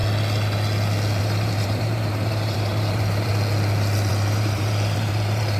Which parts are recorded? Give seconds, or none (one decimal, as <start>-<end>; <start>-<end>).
0.0-1.2; 3.3-4.1